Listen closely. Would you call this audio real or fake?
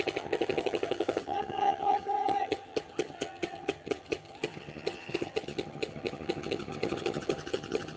fake